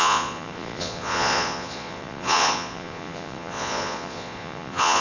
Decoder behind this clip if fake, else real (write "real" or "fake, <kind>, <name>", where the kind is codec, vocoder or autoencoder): fake, vocoder, Vocos